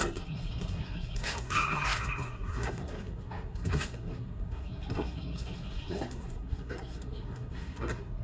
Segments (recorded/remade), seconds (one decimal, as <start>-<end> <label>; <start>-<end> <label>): 0.0-8.2 remade